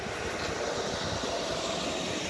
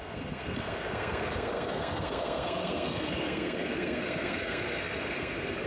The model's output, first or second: second